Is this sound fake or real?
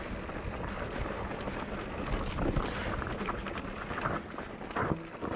real